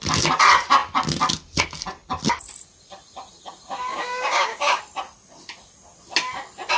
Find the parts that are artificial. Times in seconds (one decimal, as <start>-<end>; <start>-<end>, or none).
3.9-4.8